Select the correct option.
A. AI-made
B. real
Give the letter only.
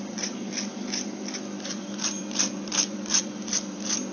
A